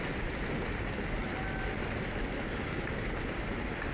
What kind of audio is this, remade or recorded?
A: recorded